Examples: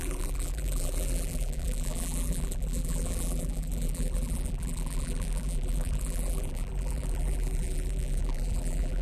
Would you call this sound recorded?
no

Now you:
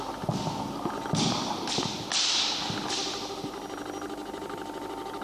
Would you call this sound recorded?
yes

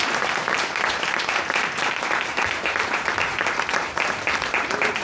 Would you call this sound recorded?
no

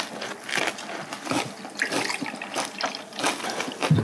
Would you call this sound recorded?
yes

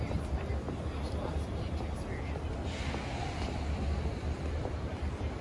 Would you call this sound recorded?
no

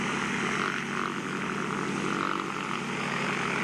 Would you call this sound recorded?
yes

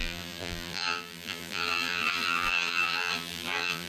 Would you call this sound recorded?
no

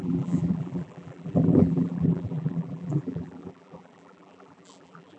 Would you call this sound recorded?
no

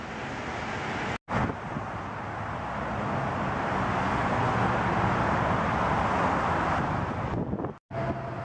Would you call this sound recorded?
yes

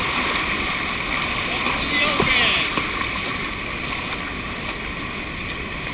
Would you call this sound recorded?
no